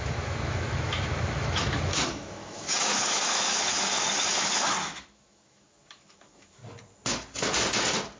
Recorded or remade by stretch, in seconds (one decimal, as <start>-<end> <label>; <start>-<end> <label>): 0.0-6.6 remade; 6.6-8.2 recorded